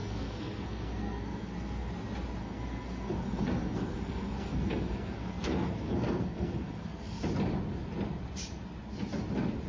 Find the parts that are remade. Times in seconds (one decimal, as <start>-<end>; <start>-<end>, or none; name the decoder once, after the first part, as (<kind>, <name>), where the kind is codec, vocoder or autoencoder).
0.0-1.9 (codec, SNAC); 2.4-7.2

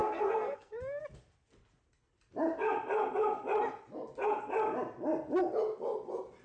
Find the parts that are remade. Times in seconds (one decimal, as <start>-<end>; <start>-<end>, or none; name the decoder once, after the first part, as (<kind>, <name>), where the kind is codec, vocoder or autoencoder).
0.0-1.0 (codec, SNAC)

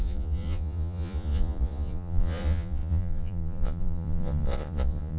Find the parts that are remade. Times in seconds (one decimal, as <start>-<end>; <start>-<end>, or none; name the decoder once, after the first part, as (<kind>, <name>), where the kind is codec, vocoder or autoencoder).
0.0-5.2 (vocoder, Vocos)

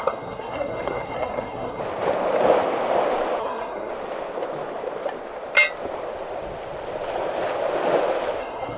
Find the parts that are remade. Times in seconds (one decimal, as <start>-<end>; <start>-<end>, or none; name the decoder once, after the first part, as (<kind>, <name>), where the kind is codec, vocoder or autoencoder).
0.0-1.8 (codec, SNAC); 3.4-3.9; 8.4-8.8

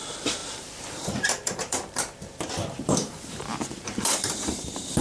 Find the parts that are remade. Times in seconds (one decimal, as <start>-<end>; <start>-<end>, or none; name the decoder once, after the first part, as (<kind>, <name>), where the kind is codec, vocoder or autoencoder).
0.0-5.0 (vocoder, BigVGAN v2)

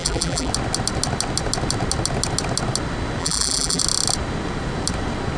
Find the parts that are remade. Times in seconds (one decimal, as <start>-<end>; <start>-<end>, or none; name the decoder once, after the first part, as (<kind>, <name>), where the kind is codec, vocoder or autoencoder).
0.0-0.5 (vocoder, BigVGAN v2); 3.2-3.8